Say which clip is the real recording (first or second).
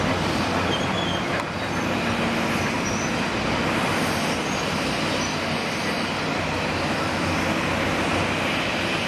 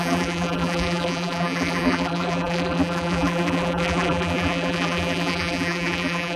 first